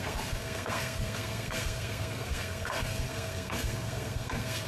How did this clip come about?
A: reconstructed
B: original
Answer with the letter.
A